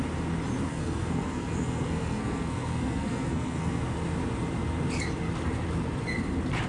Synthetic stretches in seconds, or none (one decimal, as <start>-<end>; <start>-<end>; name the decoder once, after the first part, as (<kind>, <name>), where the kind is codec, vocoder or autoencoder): 0.7-3.8 (codec, SNAC)